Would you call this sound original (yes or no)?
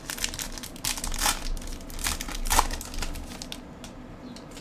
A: yes